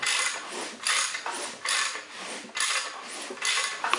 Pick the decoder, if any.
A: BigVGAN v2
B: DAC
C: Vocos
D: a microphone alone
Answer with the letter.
A